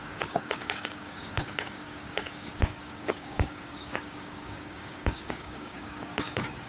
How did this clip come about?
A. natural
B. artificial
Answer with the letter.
B